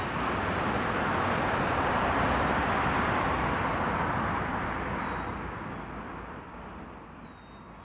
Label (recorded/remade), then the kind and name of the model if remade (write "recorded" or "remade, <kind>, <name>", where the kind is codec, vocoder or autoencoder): recorded